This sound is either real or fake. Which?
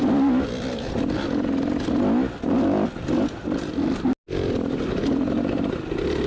real